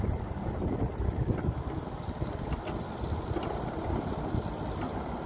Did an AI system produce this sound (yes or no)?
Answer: no